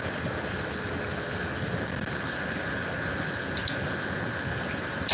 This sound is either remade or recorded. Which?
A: recorded